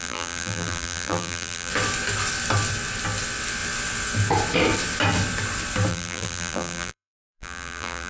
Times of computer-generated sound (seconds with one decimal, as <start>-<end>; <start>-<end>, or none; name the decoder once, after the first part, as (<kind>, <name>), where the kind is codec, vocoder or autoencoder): 0.0-1.7 (vocoder, BigVGAN v2); 5.9-8.1